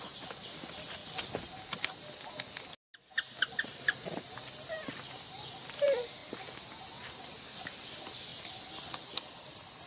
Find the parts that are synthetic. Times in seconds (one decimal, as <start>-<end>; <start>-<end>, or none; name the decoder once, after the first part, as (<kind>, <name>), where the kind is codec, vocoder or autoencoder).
0.0-1.0 (vocoder, BigVGAN v2); 3.6-6.2; 7.2-8.3; 9.1-9.9